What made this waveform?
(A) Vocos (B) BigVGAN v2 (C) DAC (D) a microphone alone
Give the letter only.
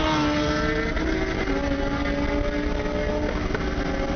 D